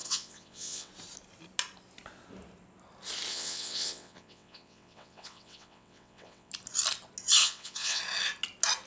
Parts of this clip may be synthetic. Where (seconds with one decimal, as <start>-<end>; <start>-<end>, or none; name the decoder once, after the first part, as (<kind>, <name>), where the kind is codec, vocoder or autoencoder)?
0.0-0.9 (vocoder, WaveNeXt); 3.3-6.5; 7.4-8.0